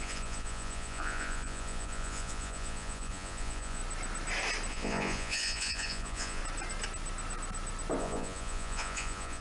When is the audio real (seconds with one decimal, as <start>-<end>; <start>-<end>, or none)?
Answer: 3.8-4.7; 6.4-8.0